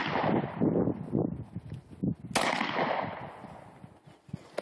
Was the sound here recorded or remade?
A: recorded